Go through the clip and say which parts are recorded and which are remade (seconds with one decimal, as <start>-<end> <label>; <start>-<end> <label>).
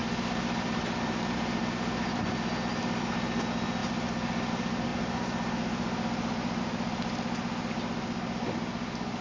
0.0-9.2 recorded